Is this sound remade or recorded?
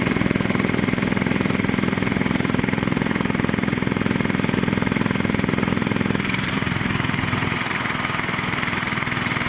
remade